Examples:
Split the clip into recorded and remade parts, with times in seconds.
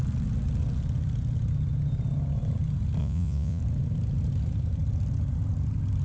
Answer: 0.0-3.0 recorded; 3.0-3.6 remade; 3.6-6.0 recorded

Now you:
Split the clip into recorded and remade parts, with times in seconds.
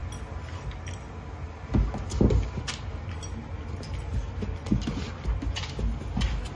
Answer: 0.0-6.6 recorded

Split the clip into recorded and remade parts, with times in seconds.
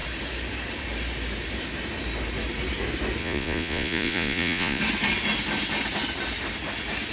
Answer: 0.0-3.2 recorded; 3.2-4.8 remade; 4.8-7.1 recorded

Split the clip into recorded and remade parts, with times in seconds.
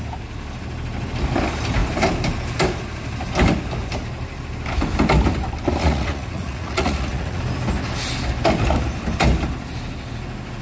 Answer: 0.0-5.8 recorded; 5.8-7.4 remade; 7.4-10.6 recorded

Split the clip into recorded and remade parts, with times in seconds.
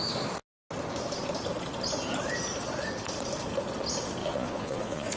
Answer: 0.0-4.2 recorded; 4.2-5.2 remade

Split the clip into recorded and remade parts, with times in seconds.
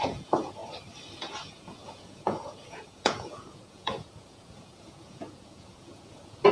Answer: 0.0-0.6 remade; 0.6-1.2 recorded; 1.2-6.5 remade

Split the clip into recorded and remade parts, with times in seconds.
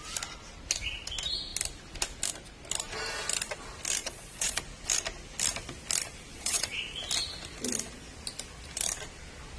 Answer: 0.0-4.0 recorded; 4.0-4.6 remade; 4.6-6.3 recorded; 6.3-7.0 remade; 7.0-9.6 recorded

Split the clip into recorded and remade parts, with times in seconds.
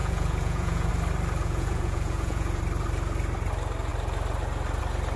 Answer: 0.0-0.9 remade; 0.9-1.4 recorded; 1.4-2.6 remade; 2.6-5.2 recorded